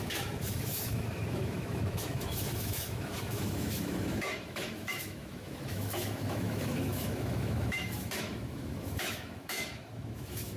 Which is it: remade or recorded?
remade